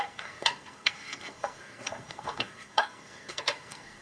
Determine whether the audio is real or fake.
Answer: fake